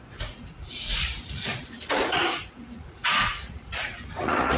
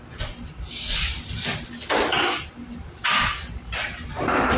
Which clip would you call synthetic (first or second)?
first